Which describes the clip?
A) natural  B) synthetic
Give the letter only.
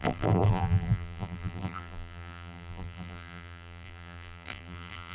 B